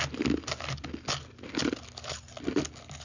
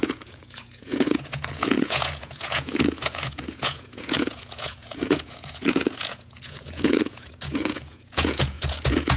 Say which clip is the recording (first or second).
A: first